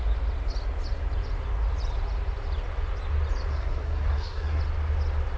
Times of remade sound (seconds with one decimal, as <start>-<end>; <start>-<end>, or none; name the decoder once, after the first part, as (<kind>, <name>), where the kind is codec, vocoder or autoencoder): 3.5-4.6 (codec, SNAC)